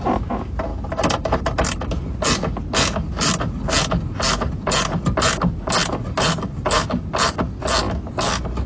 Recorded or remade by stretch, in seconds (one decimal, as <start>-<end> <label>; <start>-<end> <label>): 0.0-8.7 recorded